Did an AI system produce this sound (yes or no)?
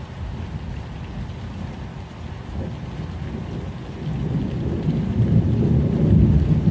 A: no